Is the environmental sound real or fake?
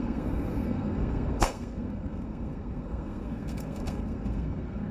fake